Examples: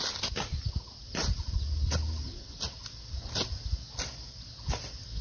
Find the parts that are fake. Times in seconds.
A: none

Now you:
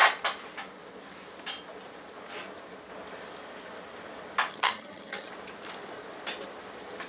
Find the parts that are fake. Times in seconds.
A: 4.5-5.3 (vocoder, HiFi-GAN)

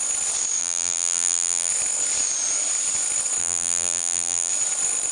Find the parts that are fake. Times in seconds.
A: 0.6-1.7 (vocoder, BigVGAN v2); 3.4-4.5

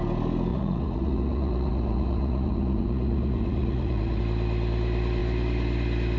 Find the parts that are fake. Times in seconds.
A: 0.5-4.2 (vocoder, Vocos)

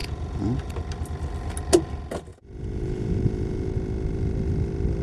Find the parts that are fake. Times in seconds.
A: 0.0-0.7 (vocoder, Vocos); 2.3-3.7

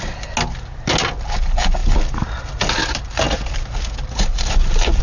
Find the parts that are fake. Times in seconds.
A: none